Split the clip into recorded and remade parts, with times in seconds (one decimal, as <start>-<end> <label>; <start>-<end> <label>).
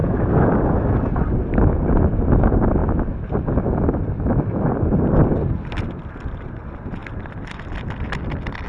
0.0-1.0 remade; 1.0-8.7 recorded